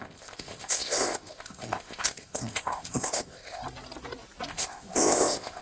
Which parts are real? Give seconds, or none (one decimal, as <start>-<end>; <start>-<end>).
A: 3.6-4.5